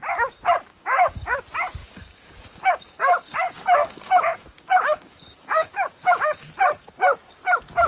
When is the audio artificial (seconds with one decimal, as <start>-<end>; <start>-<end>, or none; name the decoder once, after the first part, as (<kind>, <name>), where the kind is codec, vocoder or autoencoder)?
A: 0.7-1.4 (codec, DAC); 1.8-6.5